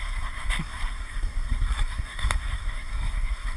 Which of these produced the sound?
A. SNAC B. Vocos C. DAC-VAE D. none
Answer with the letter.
A